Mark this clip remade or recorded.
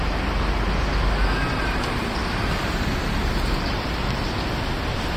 recorded